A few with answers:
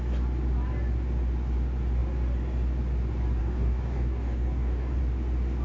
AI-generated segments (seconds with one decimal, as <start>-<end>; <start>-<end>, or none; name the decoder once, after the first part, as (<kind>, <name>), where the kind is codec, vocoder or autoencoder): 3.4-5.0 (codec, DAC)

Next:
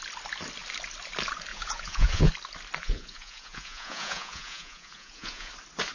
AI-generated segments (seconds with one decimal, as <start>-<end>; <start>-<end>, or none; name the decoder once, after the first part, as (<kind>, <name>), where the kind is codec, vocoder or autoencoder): 1.5-2.3 (vocoder, Vocos); 2.8-5.5

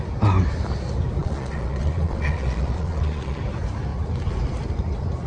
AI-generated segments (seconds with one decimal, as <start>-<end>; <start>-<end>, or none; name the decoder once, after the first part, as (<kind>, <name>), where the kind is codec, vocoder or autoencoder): 1.2-3.4 (vocoder, Vocos)

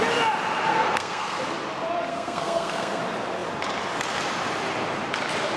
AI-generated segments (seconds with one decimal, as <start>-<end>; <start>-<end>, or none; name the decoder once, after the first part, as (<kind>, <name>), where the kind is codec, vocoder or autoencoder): 0.7-1.4 (codec, SNAC); 2.1-3.0

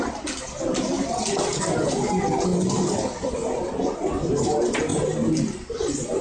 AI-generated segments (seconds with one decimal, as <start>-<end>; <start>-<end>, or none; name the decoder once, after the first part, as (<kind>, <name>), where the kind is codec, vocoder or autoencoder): none